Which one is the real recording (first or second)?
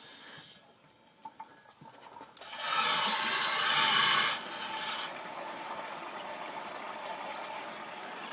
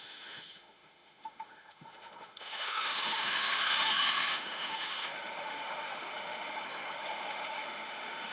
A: first